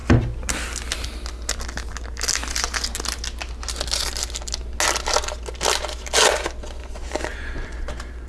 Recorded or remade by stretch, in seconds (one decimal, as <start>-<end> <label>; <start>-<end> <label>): 0.0-6.8 recorded; 6.8-7.9 remade; 7.9-8.3 recorded